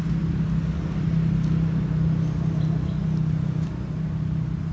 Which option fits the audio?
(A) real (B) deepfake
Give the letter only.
A